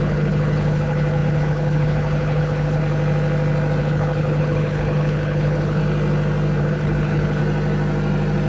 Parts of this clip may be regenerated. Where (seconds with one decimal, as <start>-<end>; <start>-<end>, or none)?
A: 0.0-2.8; 3.8-5.8; 6.6-7.4